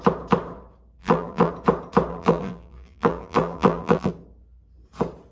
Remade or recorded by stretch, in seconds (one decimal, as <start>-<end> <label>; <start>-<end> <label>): 0.0-1.0 recorded; 1.0-1.5 remade; 1.5-2.1 recorded; 2.1-4.1 remade; 4.1-5.3 recorded